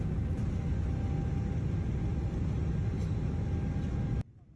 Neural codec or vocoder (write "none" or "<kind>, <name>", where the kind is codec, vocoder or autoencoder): none